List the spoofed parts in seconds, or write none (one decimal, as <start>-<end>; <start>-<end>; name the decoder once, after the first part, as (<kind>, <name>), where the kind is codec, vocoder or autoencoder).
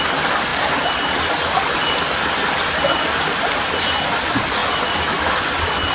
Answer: none